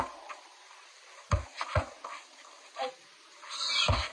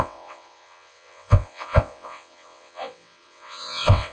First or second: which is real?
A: first